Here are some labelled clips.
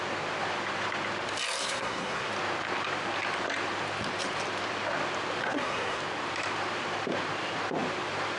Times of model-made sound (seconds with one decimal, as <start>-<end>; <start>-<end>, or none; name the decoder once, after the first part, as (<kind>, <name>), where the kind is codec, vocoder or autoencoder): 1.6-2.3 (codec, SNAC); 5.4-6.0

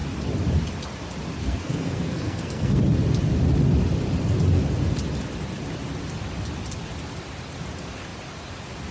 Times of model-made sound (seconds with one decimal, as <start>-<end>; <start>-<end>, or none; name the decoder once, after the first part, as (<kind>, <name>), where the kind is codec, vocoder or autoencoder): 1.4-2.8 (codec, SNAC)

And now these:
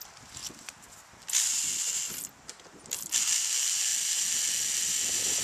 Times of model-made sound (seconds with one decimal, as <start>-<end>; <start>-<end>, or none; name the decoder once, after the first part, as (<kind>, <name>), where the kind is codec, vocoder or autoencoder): none

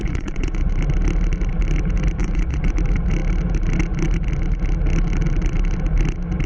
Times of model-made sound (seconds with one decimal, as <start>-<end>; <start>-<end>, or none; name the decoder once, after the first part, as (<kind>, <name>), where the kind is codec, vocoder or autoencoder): 0.0-0.7 (vocoder, Vocos); 2.2-2.7

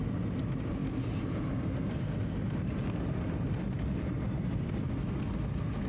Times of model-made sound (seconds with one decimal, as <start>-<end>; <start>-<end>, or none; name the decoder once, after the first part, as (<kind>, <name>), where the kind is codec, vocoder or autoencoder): none

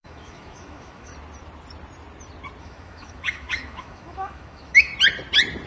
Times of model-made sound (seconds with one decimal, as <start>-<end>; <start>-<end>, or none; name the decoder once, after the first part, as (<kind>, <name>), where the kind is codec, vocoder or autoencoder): 0.0-1.1 (autoencoder, DAC-VAE); 2.6-4.9

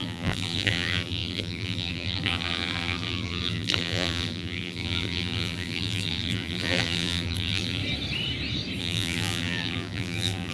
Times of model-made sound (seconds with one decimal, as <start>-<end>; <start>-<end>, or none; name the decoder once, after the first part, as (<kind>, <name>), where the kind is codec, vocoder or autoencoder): 0.0-7.8 (vocoder, BigVGAN v2); 8.8-10.5

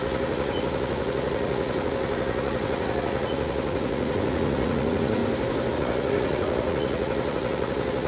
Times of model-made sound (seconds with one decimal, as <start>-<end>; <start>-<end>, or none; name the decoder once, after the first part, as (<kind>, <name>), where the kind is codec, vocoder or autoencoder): 0.0-5.2 (vocoder, Vocos); 5.7-8.1